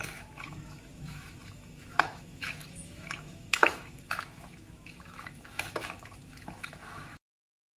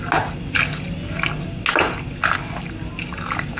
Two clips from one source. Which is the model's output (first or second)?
first